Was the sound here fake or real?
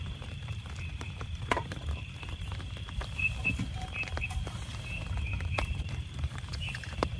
fake